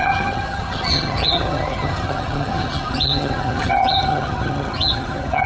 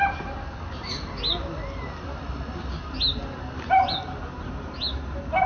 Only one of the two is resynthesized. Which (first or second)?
first